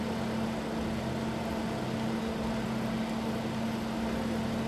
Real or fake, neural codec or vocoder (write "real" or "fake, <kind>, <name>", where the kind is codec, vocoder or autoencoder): real